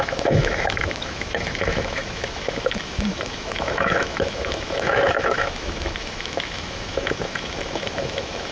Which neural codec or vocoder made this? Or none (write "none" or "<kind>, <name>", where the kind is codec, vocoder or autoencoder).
autoencoder, DAC-VAE